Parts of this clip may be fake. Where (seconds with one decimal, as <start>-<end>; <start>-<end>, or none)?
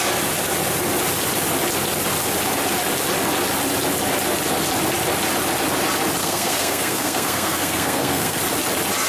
6.2-8.4